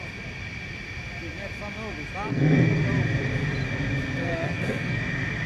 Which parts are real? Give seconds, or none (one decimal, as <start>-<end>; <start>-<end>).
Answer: 0.0-2.3; 2.8-4.2; 5.0-5.5